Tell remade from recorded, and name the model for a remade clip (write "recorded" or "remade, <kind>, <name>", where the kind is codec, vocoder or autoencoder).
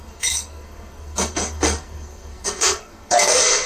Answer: remade, codec, SNAC